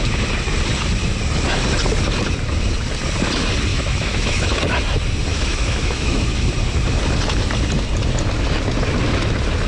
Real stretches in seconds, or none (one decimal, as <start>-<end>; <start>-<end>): 0.0-3.7; 4.6-5.3; 6.5-9.7

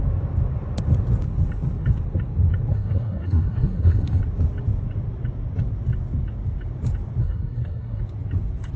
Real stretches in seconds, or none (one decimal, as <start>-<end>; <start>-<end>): 0.0-2.7; 4.2-7.2; 8.0-8.8

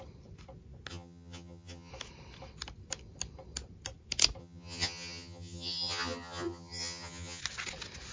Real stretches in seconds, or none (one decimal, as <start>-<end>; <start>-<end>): 0.0-0.9; 1.9-4.4; 7.4-8.1

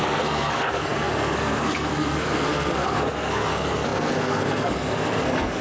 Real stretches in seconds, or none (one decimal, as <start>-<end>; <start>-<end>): none